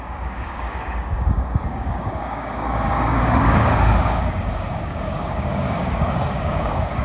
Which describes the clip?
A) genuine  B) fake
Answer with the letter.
B